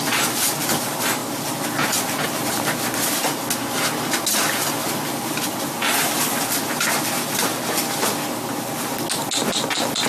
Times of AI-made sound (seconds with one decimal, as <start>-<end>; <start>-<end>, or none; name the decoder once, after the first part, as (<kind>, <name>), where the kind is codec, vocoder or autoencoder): none